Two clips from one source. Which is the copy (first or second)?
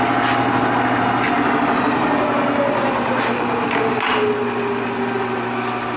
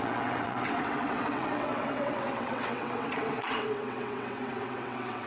second